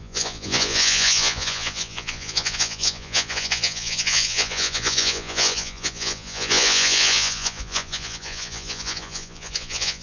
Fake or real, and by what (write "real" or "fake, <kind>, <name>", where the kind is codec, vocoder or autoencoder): fake, vocoder, Vocos